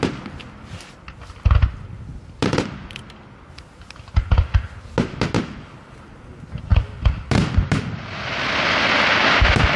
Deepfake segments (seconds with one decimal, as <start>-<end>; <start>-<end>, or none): none